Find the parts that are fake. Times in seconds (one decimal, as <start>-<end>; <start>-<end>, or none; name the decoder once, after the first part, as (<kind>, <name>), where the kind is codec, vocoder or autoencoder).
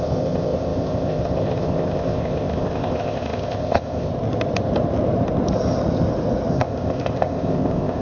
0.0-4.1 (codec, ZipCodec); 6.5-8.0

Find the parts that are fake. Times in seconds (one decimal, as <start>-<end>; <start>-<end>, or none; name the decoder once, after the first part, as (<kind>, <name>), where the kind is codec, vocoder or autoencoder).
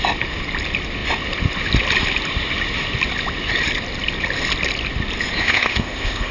5.4-6.3 (codec, ZipCodec)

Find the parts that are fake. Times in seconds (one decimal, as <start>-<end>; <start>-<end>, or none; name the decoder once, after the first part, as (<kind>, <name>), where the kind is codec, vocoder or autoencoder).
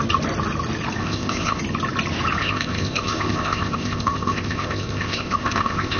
1.0-1.6 (codec, ZipCodec); 2.4-6.0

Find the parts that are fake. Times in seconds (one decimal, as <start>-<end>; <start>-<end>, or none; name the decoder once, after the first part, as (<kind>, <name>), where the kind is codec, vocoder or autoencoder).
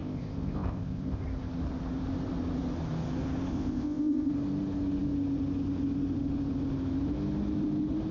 0.0-1.2 (codec, ZipCodec); 3.5-4.3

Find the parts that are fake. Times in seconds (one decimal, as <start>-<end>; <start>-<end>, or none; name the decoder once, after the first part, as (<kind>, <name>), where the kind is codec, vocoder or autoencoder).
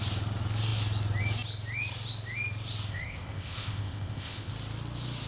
2.9-4.5 (codec, ZipCodec)